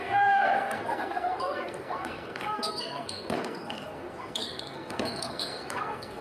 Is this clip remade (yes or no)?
yes